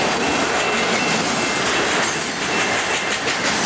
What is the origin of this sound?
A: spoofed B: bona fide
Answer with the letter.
B